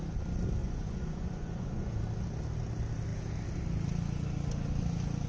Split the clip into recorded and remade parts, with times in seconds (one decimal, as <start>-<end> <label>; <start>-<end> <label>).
0.0-0.6 recorded; 0.6-2.0 remade; 2.0-5.3 recorded